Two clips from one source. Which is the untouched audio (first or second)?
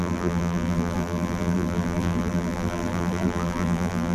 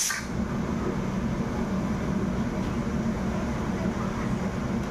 second